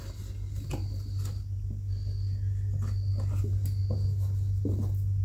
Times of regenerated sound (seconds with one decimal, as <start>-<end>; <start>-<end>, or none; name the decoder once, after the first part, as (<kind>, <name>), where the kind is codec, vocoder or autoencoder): none